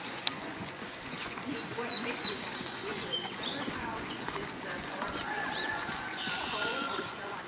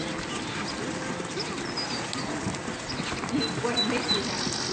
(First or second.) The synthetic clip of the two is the first